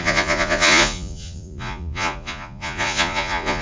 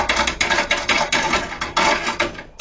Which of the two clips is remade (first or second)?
first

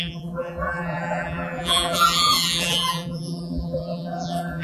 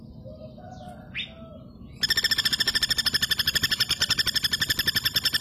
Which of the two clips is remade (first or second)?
first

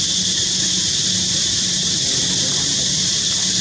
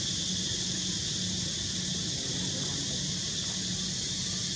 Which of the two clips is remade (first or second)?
first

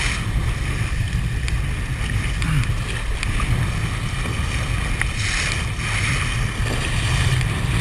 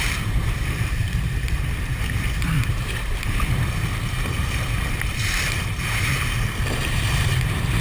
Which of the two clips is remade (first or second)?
second